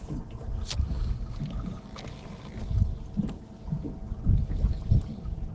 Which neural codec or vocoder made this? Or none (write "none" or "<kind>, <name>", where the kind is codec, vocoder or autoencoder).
none